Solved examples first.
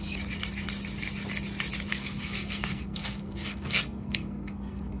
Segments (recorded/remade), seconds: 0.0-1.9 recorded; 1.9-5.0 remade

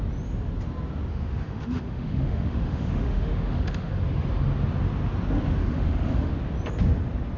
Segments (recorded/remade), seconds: 0.0-1.1 recorded; 1.1-3.9 remade; 3.9-5.6 recorded; 5.6-6.3 remade; 6.3-7.4 recorded

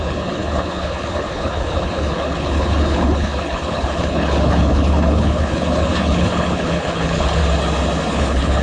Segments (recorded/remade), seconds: 0.0-7.4 remade; 7.4-8.1 recorded; 8.1-8.6 remade

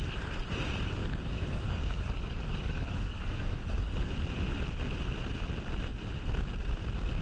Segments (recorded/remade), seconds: 0.0-1.0 recorded; 1.0-4.1 remade; 4.1-7.2 recorded

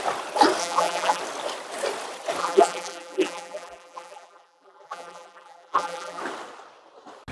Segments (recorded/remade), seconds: 0.0-0.6 recorded; 0.6-1.2 remade; 1.2-2.4 recorded; 2.4-6.2 remade; 6.2-7.3 recorded